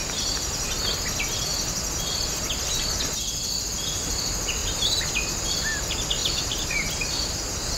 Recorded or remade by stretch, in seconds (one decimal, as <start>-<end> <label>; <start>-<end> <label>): 0.0-7.8 recorded